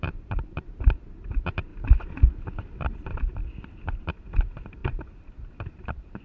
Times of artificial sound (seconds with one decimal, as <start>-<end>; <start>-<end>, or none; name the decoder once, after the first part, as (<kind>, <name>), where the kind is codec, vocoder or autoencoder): 0.0-1.7 (vocoder, BigVGAN v2); 3.0-6.2